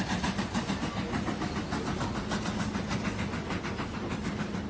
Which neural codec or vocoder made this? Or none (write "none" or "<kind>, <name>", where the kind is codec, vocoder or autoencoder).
none